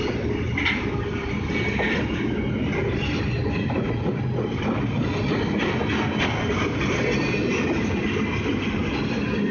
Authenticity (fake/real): real